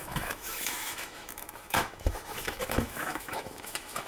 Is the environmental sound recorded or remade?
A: remade